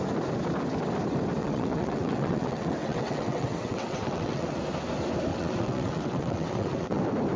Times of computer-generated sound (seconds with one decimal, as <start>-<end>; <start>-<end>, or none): 1.4-4.6; 5.3-7.0